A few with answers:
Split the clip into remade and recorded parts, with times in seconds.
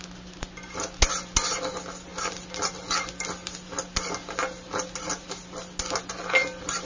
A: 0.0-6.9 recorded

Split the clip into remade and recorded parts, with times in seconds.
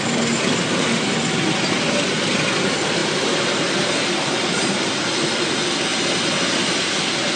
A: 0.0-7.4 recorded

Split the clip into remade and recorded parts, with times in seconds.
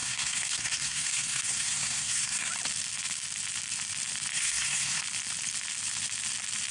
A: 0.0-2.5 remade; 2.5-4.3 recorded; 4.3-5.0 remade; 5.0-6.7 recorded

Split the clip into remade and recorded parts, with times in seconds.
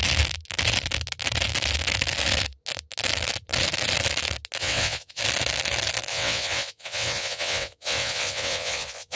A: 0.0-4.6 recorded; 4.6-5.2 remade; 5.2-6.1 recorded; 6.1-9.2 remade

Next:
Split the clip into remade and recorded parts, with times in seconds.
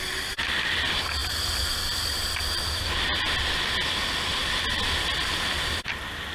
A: 0.0-6.3 recorded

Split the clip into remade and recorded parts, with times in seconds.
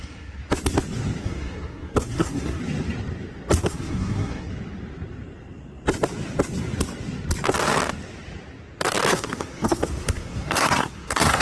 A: 0.0-0.4 remade; 0.4-1.2 recorded; 1.2-2.6 remade; 2.6-3.6 recorded; 3.6-4.5 remade; 4.5-9.1 recorded; 9.1-11.4 remade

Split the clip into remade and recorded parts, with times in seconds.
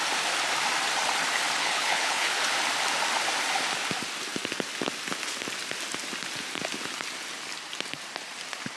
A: 0.0-1.6 recorded; 1.6-2.4 remade; 2.4-8.8 recorded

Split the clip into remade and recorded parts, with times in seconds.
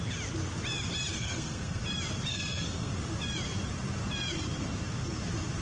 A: 0.0-1.1 recorded; 1.1-1.8 remade; 1.8-2.3 recorded; 2.3-2.9 remade; 2.9-5.6 recorded